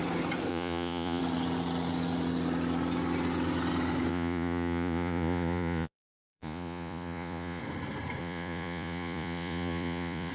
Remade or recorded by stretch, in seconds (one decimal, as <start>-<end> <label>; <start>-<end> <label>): 0.0-0.5 recorded; 0.5-1.2 remade; 1.2-4.1 recorded; 4.1-7.6 remade; 7.6-8.2 recorded; 8.2-10.3 remade